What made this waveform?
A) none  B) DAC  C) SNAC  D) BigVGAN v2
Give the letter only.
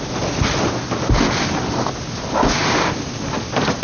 A